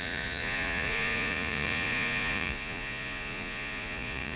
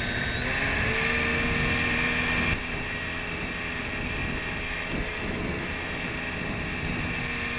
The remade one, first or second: first